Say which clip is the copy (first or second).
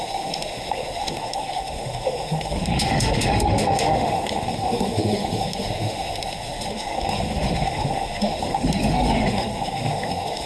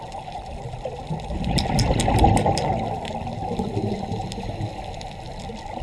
first